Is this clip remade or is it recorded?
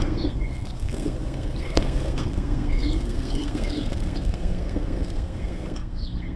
remade